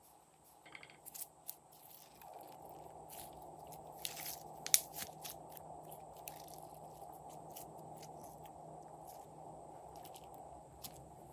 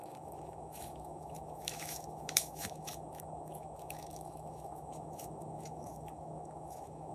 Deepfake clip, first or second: second